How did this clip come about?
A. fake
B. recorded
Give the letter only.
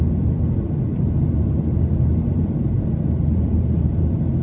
A